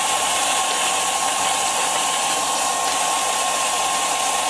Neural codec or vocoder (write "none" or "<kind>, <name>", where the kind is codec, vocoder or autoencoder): vocoder, BigVGAN v2